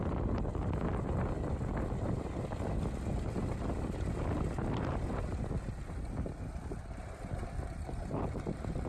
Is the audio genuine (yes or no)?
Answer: yes